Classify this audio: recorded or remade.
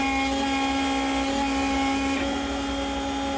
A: recorded